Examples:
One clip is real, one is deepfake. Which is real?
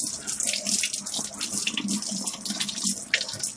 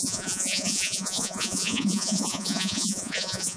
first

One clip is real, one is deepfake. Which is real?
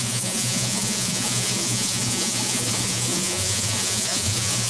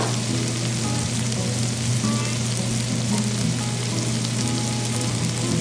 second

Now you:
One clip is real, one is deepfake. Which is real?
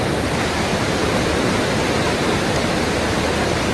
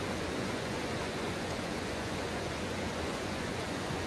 first